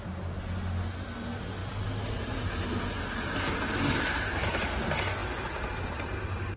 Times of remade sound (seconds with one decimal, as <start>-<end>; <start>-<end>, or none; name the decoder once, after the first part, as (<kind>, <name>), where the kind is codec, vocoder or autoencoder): none